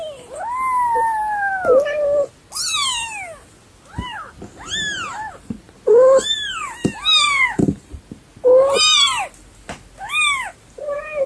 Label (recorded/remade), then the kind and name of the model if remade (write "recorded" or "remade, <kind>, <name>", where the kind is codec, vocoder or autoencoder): recorded